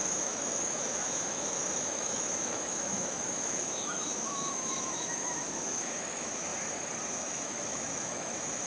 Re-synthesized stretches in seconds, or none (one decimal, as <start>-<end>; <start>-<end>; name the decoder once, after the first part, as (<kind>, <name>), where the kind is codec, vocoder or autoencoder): 0.0-6.5 (autoencoder, DAC-VAE); 7.1-8.7